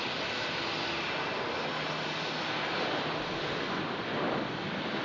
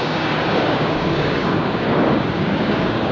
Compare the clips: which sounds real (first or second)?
first